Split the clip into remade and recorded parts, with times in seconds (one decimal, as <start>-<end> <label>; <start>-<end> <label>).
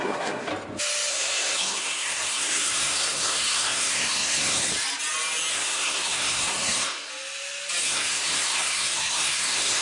0.0-0.5 remade; 0.5-1.1 recorded; 1.1-4.7 remade; 4.7-5.5 recorded; 5.5-7.1 remade; 7.1-7.8 recorded; 7.8-9.8 remade